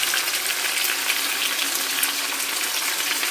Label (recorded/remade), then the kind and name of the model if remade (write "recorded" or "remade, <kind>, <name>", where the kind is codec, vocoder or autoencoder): recorded